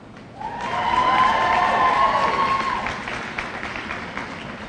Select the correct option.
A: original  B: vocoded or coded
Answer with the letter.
A